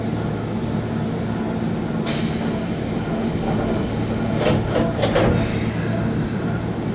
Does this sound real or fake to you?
real